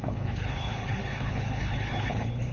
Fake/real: fake